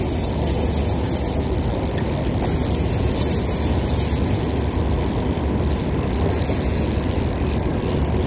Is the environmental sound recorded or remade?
recorded